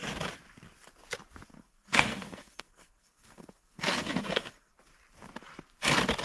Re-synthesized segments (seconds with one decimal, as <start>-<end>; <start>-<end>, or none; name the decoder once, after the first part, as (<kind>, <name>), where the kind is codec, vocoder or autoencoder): 1.6-4.7 (codec, SNAC)